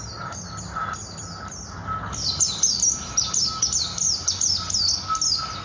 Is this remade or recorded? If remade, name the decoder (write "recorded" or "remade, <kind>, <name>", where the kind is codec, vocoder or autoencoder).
recorded